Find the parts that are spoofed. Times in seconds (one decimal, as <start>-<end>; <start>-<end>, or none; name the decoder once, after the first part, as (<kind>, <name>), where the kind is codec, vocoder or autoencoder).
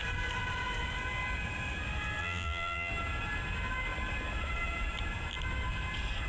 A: 2.2-2.9 (vocoder, BigVGAN v2)